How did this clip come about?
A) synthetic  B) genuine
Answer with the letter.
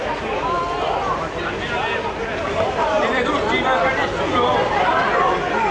A